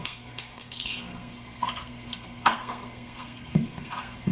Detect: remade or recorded remade